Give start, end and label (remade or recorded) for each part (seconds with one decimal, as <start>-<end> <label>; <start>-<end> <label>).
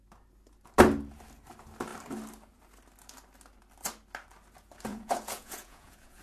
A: 0.0-4.9 recorded; 4.9-6.2 remade